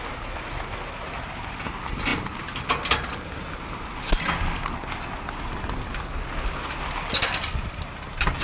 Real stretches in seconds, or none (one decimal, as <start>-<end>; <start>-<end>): 0.0-8.4